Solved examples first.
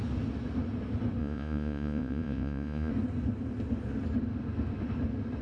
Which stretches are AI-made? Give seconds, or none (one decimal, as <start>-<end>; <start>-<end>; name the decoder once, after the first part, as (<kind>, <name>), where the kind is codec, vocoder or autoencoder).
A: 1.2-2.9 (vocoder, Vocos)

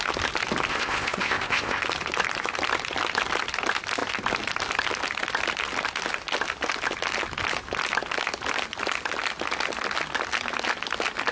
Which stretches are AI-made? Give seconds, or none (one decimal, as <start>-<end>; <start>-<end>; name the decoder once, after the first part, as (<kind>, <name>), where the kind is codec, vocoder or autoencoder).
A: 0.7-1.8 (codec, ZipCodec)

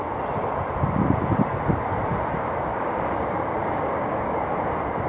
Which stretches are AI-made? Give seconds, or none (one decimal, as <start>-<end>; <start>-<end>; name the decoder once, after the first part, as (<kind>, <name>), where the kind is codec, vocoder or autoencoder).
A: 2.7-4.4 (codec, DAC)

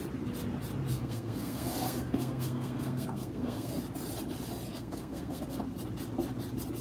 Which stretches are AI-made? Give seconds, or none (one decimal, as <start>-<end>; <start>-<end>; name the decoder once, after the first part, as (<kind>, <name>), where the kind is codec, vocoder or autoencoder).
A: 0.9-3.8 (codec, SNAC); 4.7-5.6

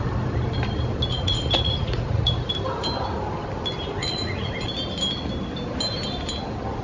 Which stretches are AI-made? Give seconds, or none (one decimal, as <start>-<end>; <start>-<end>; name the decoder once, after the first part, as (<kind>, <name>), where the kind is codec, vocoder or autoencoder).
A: 1.1-2.5 (vocoder, Vocos); 4.0-4.5

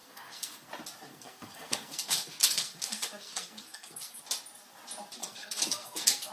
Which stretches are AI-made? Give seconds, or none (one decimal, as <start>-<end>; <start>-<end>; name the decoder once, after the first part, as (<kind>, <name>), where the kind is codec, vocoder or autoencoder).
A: 0.0-0.7 (codec, SNAC); 1.1-4.2; 5.2-6.3